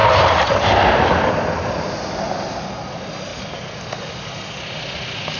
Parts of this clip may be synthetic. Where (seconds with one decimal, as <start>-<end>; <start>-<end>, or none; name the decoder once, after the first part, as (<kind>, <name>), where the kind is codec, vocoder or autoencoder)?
0.0-1.8 (vocoder, BigVGAN v2)